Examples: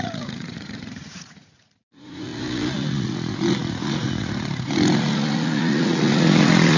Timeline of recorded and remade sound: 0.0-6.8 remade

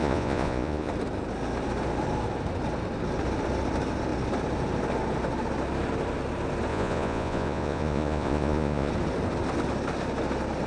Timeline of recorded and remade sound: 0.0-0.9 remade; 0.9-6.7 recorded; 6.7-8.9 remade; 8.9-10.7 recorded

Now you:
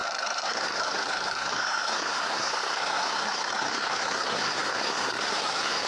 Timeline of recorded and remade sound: 0.0-5.9 remade

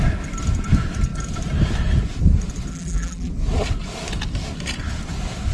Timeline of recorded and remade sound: 0.0-2.7 recorded; 2.7-3.3 remade; 3.3-5.5 recorded

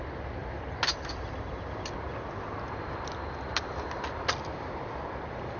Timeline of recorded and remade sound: 0.0-5.6 recorded

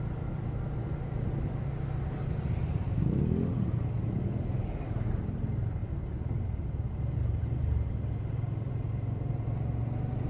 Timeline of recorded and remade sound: 0.0-10.3 recorded

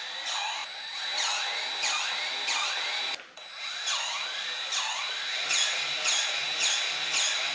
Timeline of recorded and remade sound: 0.0-7.5 recorded